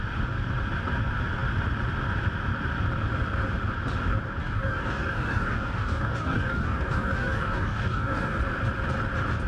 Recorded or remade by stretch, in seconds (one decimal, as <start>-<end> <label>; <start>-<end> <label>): 0.0-4.4 recorded; 4.4-8.4 remade; 8.4-9.5 recorded